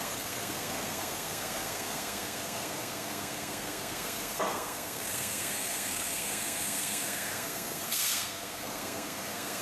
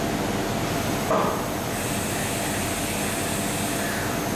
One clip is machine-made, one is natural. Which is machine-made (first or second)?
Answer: first